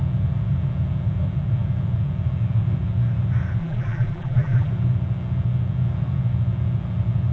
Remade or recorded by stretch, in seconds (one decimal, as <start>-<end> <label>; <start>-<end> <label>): 0.0-3.6 recorded; 3.6-4.7 remade; 4.7-7.3 recorded